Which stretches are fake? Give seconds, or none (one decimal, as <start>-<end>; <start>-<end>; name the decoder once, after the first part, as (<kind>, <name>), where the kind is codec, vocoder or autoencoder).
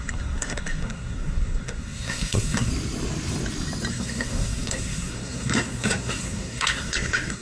0.0-2.7 (codec, SNAC); 3.9-7.4